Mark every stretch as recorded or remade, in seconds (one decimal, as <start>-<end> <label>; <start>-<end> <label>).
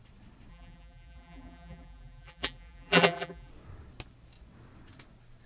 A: 0.0-0.5 recorded; 0.5-3.5 remade; 3.5-5.5 recorded